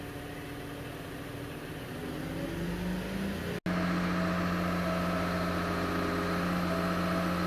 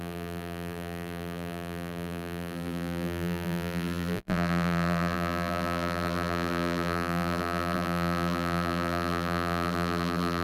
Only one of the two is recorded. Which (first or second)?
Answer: first